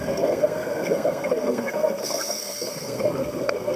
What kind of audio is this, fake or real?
fake